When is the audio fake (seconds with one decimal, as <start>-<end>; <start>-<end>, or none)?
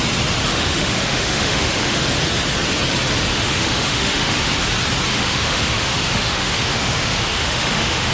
0.5-2.0; 3.3-4.5; 5.1-8.1